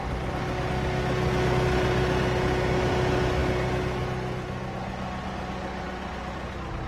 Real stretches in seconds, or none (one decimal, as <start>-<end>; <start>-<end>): 0.0-6.9